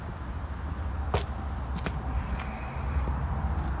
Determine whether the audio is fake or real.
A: real